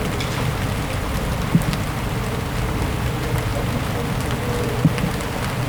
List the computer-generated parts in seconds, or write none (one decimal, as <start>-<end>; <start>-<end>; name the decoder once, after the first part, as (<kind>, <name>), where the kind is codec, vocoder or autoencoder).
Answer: 1.3-1.9 (vocoder, BigVGAN v2)